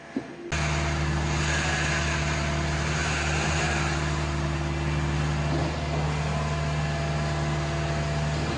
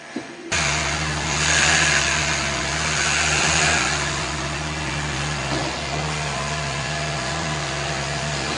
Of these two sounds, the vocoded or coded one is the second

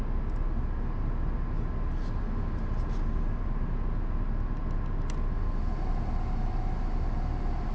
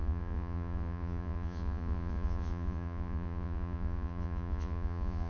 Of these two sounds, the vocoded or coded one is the second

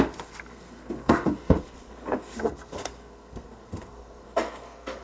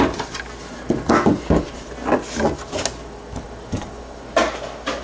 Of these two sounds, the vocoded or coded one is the first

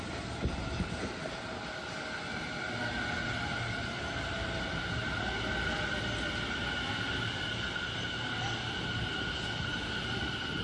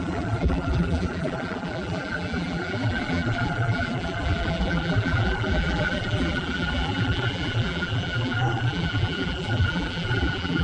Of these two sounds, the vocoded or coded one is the second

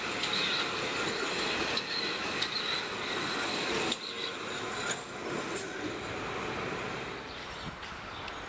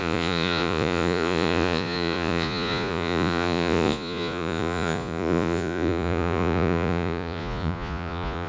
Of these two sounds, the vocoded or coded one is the second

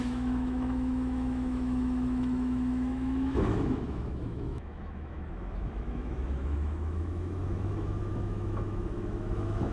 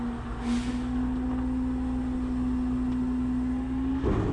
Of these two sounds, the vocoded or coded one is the first